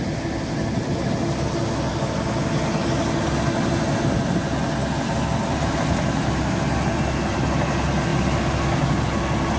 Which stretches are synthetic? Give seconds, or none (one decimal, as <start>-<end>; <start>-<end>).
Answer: none